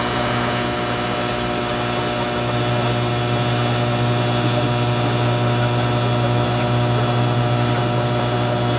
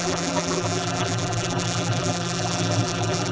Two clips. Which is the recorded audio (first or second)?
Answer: first